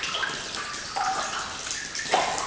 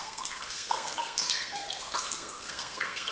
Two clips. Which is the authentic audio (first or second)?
first